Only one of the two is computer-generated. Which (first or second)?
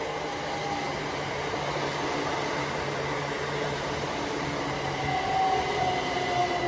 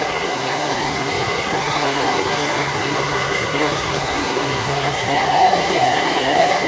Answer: second